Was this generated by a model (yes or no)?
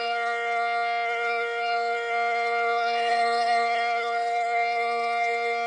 yes